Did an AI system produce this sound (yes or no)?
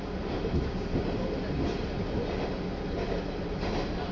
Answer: no